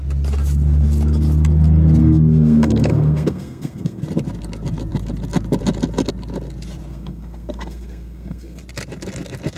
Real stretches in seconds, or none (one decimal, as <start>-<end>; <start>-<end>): 0.0-2.0; 4.0-6.9; 8.6-9.6